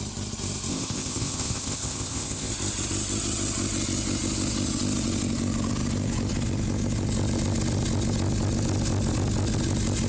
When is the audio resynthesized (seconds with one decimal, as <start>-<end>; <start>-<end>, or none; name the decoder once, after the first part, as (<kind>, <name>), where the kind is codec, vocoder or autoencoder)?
0.7-2.5 (codec, ZipCodec)